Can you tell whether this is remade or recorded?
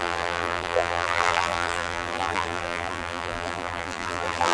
remade